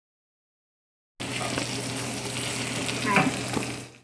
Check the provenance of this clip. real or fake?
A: real